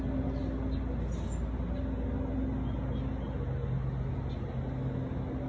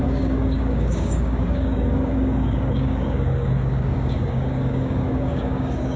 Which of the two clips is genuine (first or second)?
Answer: first